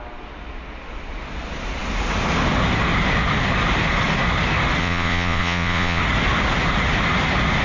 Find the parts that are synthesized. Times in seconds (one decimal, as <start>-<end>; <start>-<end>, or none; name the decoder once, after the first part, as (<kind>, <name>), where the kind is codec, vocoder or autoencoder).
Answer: 4.8-6.0 (vocoder, Vocos)